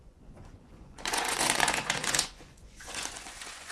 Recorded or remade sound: remade